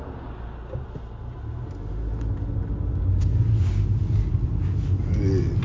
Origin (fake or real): real